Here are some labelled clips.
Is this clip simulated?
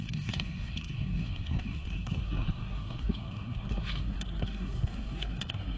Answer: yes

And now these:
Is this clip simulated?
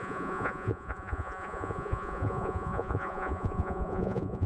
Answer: yes